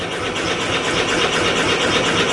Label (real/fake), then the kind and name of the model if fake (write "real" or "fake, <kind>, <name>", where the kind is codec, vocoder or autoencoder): real